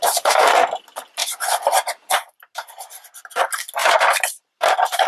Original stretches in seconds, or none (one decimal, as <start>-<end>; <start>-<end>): 0.0-1.2; 2.1-3.8; 4.6-5.1